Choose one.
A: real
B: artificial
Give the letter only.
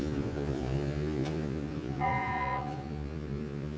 B